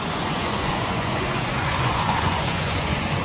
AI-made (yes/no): yes